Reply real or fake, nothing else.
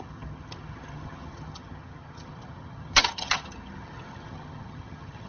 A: fake